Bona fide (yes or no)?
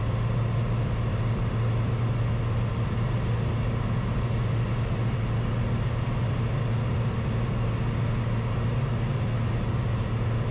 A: yes